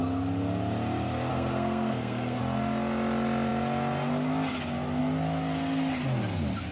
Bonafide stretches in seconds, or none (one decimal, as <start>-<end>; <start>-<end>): 0.0-1.3; 2.4-6.7